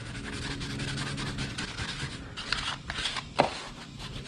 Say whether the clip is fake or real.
real